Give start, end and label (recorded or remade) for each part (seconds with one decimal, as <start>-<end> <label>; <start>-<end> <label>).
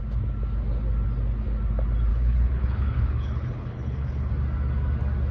0.0-2.1 recorded; 2.1-4.3 remade; 4.3-5.3 recorded